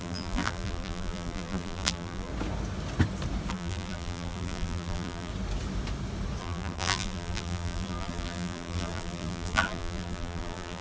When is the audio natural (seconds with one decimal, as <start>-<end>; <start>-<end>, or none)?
2.3-3.5; 5.3-6.4

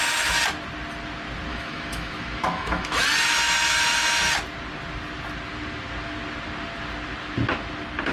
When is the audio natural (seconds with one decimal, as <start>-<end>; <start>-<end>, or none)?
0.0-1.5; 3.0-8.1

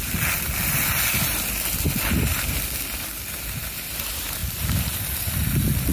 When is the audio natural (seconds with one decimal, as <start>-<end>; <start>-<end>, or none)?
2.3-3.2

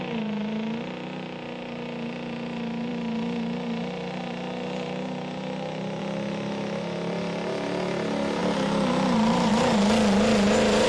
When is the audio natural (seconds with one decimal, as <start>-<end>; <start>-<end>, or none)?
0.0-10.9

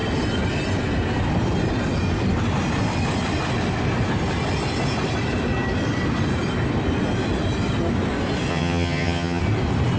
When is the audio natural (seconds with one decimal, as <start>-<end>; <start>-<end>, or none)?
0.0-8.5; 9.4-10.0

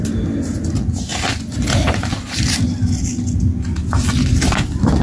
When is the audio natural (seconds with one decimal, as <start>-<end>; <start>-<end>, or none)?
0.0-5.0

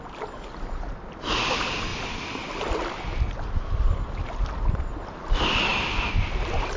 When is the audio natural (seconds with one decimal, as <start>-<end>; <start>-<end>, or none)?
0.0-6.8